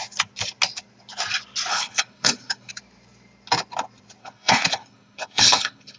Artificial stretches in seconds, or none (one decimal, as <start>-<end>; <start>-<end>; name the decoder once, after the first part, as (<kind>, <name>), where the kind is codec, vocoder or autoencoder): 1.7-2.7 (codec, HILCodec); 4.2-6.0